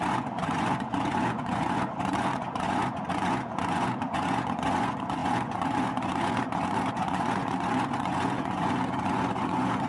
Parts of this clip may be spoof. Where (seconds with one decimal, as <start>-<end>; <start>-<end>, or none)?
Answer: 0.0-9.9